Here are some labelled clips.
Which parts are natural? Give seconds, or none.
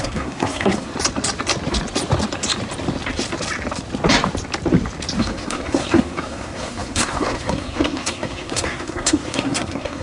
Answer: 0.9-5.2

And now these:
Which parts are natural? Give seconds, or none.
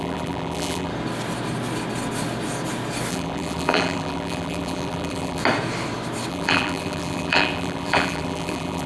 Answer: 0.9-3.1; 5.4-6.3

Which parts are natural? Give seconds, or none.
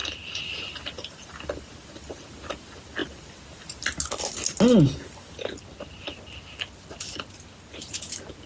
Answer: 0.0-8.5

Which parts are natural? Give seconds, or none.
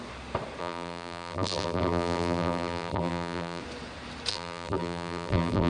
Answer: 0.0-0.6; 3.6-4.3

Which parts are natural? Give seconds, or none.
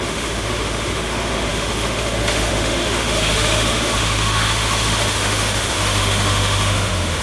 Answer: none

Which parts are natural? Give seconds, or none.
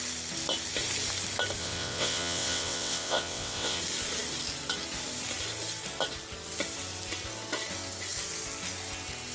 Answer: 0.0-1.6; 3.8-9.3